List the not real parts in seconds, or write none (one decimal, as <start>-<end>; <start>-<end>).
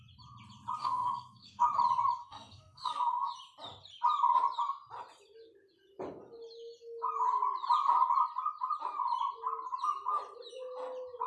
0.8-1.7; 2.2-3.3